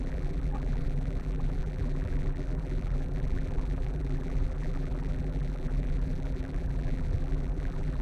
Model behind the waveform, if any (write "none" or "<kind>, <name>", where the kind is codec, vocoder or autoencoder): vocoder, BigVGAN v2